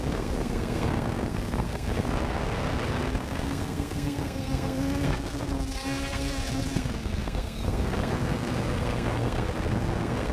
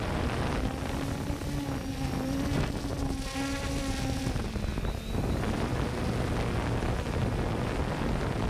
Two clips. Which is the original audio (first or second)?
second